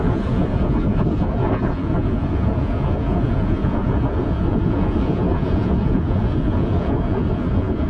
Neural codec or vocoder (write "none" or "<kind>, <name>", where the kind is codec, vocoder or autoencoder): vocoder, Vocos